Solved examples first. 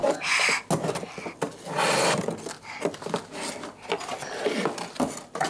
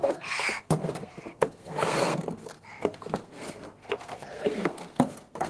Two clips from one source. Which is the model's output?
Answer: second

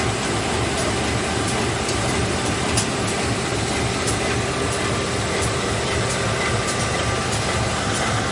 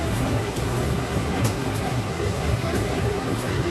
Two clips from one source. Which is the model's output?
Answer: second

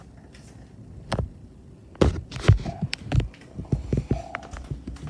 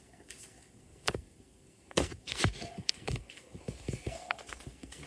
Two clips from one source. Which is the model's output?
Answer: second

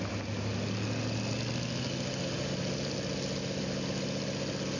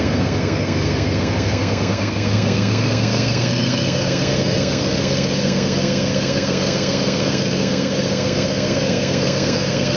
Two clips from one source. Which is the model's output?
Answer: second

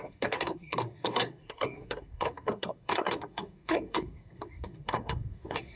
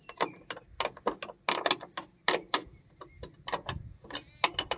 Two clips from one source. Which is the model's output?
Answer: first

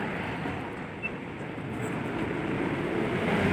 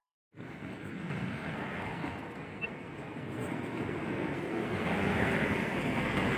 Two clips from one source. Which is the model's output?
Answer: second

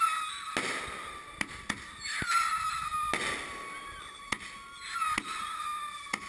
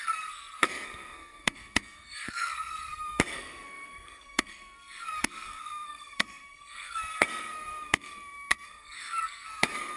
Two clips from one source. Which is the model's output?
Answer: second